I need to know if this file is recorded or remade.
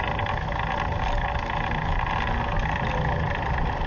recorded